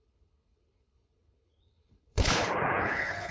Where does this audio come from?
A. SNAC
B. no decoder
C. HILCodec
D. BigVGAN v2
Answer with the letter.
C